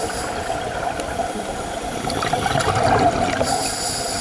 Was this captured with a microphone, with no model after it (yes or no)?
yes